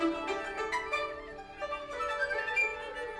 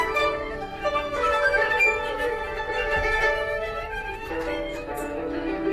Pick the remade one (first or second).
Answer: second